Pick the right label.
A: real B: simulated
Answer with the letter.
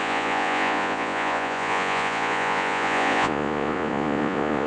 B